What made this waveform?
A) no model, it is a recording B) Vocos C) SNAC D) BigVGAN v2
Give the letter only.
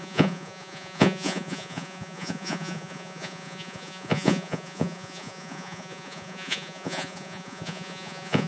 B